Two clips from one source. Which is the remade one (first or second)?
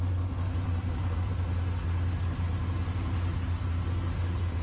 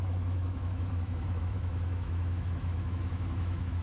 second